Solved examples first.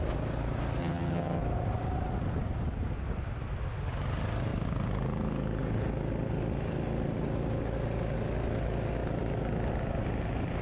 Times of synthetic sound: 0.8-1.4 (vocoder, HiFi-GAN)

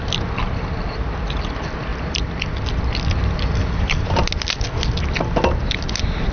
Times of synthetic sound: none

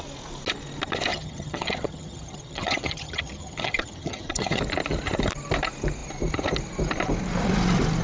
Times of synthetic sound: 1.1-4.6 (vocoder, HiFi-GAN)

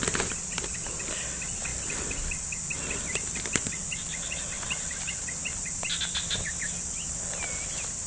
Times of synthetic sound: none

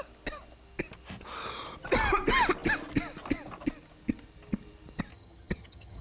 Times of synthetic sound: 5.1-6.0 (vocoder, HiFi-GAN)

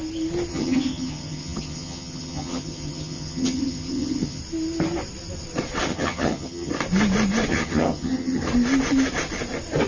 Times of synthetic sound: 0.5-4.4 (vocoder, HiFi-GAN); 5.9-6.7; 7.5-8.4